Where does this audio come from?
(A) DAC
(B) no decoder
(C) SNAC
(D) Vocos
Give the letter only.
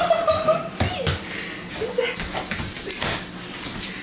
B